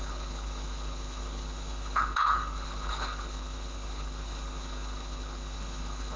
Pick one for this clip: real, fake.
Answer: fake